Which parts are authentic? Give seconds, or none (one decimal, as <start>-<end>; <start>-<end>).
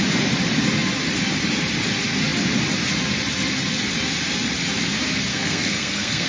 0.0-5.3